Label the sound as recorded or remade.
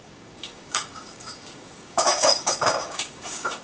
remade